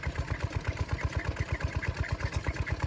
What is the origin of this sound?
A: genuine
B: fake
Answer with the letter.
A